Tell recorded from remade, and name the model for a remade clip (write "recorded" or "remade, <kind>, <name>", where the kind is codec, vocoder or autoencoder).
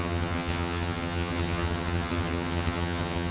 remade, vocoder, HiFi-GAN